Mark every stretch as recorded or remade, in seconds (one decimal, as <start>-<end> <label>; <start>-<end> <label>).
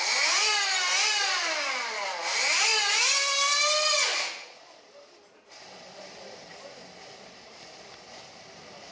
0.0-8.9 recorded